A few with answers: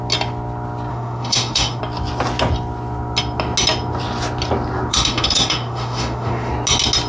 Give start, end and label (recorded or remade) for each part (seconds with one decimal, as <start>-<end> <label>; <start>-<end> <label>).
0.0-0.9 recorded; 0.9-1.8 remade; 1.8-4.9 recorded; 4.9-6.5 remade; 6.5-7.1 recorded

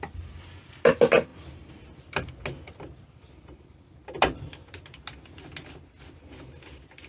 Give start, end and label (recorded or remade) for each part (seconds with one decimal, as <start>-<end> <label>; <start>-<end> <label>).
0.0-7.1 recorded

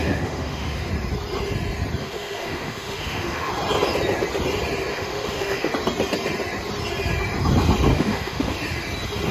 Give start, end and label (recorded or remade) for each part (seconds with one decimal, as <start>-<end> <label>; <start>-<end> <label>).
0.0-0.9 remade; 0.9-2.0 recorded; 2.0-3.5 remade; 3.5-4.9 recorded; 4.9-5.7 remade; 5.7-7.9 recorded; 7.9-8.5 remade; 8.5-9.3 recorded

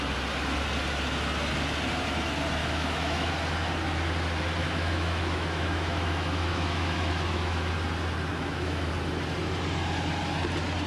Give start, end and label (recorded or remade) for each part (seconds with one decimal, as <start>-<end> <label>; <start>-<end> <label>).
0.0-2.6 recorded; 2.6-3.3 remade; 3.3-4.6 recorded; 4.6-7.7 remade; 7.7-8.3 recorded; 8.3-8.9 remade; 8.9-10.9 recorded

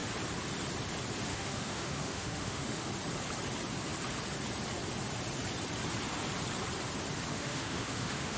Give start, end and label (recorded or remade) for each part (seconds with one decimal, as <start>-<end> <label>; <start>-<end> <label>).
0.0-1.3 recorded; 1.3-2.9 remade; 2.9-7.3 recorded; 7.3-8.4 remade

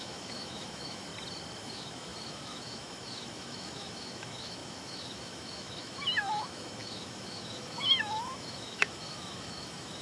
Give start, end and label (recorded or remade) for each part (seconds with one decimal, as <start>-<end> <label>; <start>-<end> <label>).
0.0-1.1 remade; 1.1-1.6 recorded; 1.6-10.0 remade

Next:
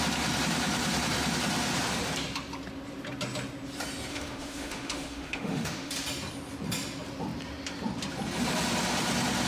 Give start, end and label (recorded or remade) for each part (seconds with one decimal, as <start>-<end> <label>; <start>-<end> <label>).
0.0-4.1 recorded; 4.1-5.9 remade; 5.9-9.5 recorded